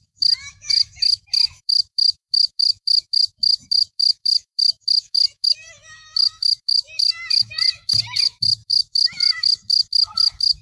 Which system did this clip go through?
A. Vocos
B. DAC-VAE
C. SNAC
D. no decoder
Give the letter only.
B